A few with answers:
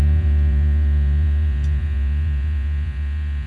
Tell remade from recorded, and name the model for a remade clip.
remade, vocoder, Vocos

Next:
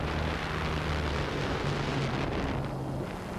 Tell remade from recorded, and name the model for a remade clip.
recorded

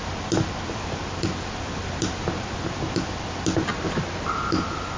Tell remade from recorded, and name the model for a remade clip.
remade, vocoder, BigVGAN v2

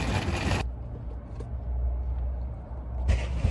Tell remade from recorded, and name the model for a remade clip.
recorded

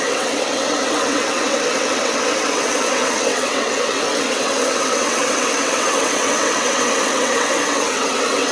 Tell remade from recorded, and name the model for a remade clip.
remade, vocoder, WaveNeXt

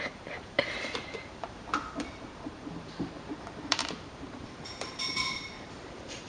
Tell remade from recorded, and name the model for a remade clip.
remade, vocoder, BigVGAN v2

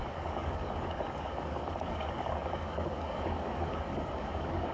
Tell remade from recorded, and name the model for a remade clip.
remade, codec, DAC